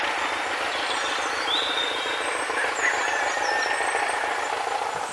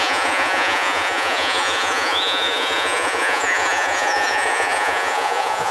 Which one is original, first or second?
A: first